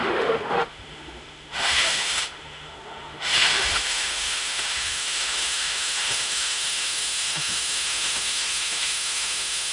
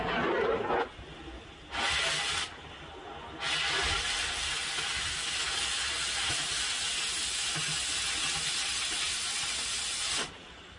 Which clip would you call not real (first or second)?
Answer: first